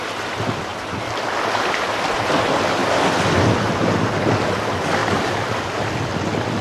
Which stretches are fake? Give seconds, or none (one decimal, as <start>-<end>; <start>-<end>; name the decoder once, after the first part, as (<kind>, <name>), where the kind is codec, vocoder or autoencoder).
2.8-3.4 (vocoder, BigVGAN v2); 5.0-6.1